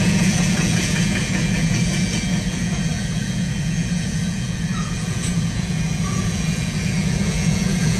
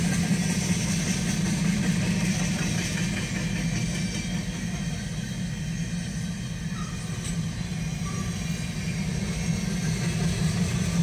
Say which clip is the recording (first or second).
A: second